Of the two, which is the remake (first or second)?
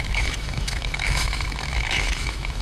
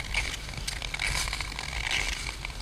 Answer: first